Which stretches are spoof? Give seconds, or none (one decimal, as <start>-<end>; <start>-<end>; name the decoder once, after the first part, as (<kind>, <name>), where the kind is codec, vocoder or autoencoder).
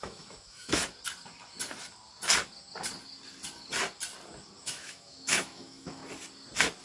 0.0-0.8 (autoencoder, DAC-VAE); 4.6-6.0